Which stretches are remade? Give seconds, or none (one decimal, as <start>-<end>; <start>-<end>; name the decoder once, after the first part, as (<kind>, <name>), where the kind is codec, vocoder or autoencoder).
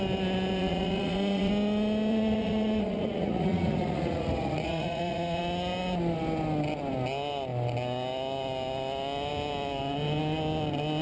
0.6-1.5 (vocoder, Vocos); 2.1-5.4